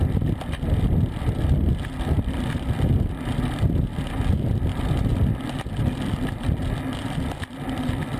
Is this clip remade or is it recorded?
recorded